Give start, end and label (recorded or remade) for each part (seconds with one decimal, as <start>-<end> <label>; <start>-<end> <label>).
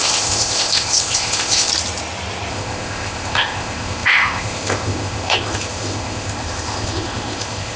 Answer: 0.0-1.7 remade; 1.7-2.5 recorded; 2.5-7.8 remade